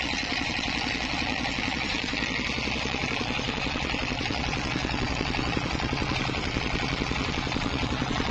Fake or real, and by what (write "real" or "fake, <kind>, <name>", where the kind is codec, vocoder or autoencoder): fake, vocoder, Vocos